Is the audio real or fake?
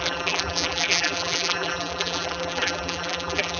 fake